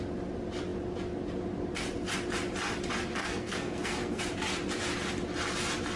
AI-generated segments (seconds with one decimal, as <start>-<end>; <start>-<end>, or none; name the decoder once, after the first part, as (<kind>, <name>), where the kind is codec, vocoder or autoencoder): 3.2-4.2 (codec, SNAC)